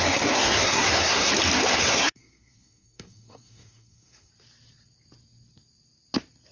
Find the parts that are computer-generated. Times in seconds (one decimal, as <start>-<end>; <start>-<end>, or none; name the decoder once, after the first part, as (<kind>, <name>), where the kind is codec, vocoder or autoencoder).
0.0-1.3 (codec, SNAC); 1.8-4.3